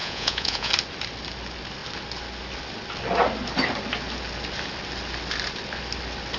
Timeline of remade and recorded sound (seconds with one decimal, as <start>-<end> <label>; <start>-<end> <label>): 0.0-0.7 remade; 0.7-6.4 recorded